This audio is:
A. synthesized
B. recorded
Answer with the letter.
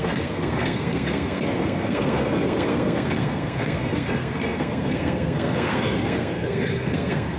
A